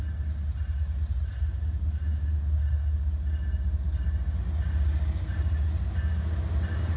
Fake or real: real